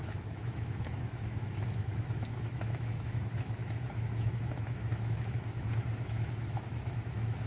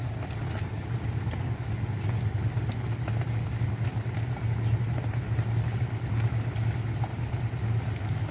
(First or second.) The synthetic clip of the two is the first